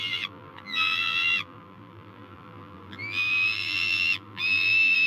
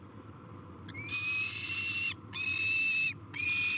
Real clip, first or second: second